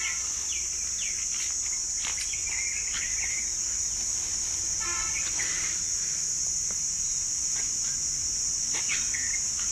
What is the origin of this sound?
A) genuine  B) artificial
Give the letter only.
A